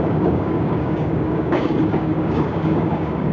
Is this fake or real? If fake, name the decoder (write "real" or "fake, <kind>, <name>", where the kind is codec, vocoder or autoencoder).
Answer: fake, codec, DAC